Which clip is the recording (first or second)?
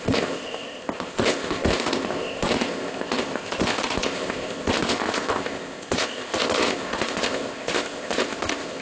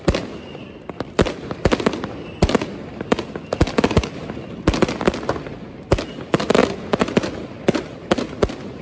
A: second